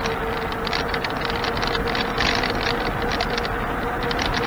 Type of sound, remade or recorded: recorded